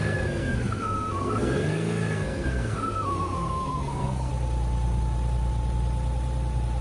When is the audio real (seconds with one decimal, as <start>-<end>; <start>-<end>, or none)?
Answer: 4.3-6.8